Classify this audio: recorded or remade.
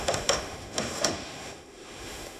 remade